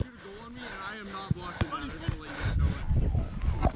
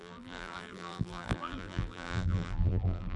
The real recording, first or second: first